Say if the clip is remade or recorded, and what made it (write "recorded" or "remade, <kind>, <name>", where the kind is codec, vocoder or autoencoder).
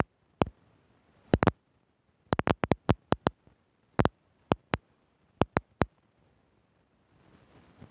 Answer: recorded